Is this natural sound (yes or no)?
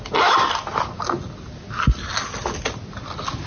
yes